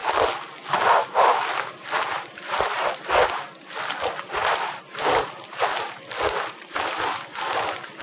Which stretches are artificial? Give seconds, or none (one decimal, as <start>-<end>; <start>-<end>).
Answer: none